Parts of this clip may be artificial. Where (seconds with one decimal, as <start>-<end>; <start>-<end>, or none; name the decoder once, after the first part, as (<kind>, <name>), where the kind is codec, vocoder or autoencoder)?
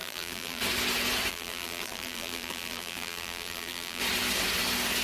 0.0-0.6 (vocoder, BigVGAN v2); 1.3-4.0